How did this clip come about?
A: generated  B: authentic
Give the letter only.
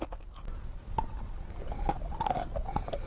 B